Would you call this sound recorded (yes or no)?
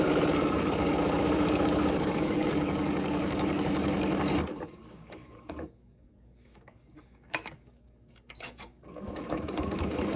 no